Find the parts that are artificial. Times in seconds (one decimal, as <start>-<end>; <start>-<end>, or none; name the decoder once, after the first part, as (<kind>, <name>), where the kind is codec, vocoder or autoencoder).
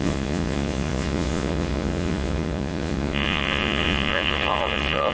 0.0-5.1 (vocoder, Vocos)